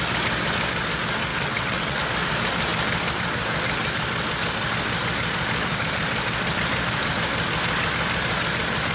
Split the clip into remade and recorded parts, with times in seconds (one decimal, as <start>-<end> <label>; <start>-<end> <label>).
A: 0.0-1.3 recorded; 1.3-2.0 remade; 2.0-8.9 recorded

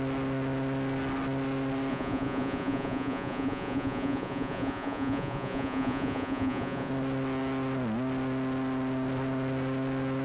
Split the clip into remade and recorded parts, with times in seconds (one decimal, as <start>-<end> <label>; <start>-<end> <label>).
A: 0.0-1.9 recorded; 1.9-6.9 remade; 6.9-10.2 recorded

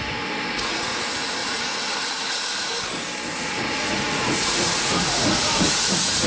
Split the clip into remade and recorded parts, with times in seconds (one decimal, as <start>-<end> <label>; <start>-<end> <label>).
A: 0.0-2.7 remade; 2.7-3.3 recorded; 3.3-6.3 remade

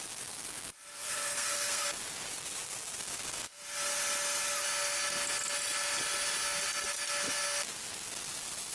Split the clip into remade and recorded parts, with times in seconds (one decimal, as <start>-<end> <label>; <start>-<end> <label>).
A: 0.0-0.9 recorded; 0.9-1.8 remade; 1.8-3.0 recorded; 3.0-3.6 remade; 3.6-8.7 recorded

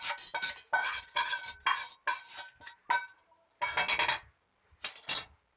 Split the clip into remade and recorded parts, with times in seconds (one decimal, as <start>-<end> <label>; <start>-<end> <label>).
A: 0.0-0.8 recorded; 0.8-1.3 remade; 1.3-5.6 recorded

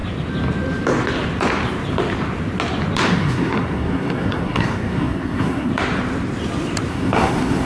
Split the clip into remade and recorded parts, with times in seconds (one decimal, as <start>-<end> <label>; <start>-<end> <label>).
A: 0.0-3.2 recorded; 3.2-5.7 remade; 5.7-6.9 recorded; 6.9-7.7 remade

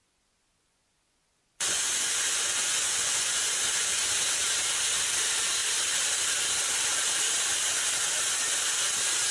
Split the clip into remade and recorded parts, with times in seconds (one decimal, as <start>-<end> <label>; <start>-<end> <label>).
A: 0.0-4.1 remade; 4.1-9.3 recorded